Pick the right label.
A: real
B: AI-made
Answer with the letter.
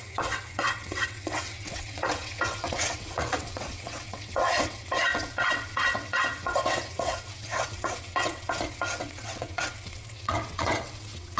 B